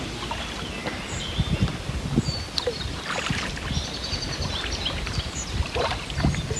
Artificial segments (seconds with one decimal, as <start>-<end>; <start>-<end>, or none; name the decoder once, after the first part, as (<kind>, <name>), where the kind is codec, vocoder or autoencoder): 0.8-1.3 (vocoder, BigVGAN v2)